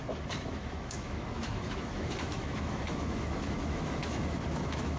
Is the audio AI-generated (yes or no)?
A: yes